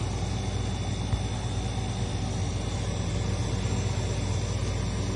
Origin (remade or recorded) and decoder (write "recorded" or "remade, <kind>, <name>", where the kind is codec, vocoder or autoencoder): recorded